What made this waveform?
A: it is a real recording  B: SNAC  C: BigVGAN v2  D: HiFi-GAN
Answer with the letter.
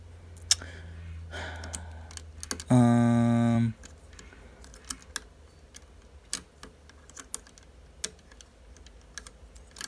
A